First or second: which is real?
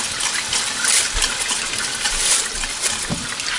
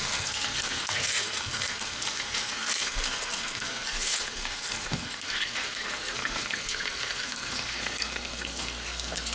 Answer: first